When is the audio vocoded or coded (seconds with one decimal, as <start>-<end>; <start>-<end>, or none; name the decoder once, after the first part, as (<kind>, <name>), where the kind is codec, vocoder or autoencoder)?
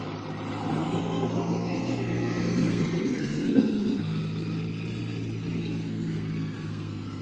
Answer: 0.8-4.2 (codec, SNAC); 5.6-7.2